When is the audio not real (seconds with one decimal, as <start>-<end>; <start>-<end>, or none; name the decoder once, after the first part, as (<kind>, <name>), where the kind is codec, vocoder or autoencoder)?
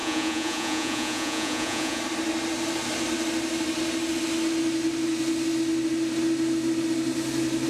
0.0-2.0 (vocoder, Vocos)